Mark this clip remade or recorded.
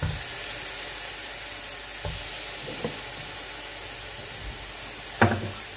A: recorded